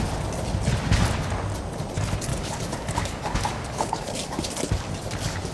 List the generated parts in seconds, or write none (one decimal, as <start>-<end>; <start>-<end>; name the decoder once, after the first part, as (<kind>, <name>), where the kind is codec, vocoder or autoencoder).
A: 2.3-4.4 (codec, DAC)